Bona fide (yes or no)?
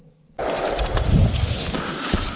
yes